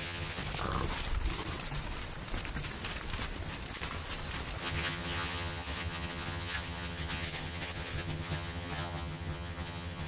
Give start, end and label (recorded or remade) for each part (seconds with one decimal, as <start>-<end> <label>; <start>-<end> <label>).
0.0-0.4 remade; 0.4-4.6 recorded; 4.6-10.1 remade